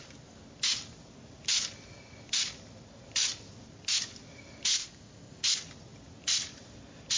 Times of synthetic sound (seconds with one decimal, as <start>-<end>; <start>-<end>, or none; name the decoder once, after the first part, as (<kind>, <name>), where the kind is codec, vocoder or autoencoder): 4.7-5.4 (codec, ZipCodec)